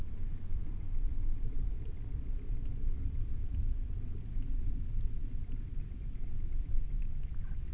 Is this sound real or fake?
real